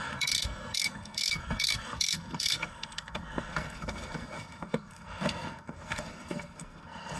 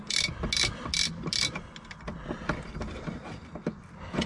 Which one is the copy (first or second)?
first